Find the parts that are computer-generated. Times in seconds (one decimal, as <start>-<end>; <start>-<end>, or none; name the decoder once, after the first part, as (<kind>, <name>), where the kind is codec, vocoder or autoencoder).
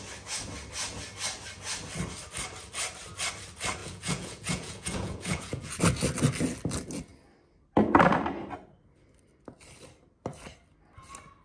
3.8-5.8 (vocoder, Vocos)